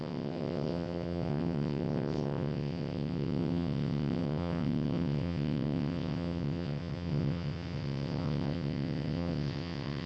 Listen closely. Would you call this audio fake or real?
fake